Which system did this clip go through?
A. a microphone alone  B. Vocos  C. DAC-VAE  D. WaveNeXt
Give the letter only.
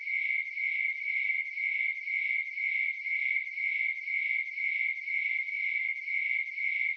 A